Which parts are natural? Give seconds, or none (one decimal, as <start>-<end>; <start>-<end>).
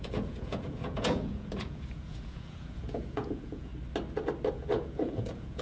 3.7-4.5